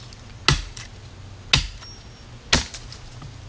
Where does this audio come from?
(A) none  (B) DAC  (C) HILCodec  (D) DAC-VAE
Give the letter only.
A